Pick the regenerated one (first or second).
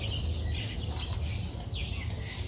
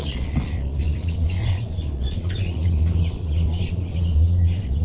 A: second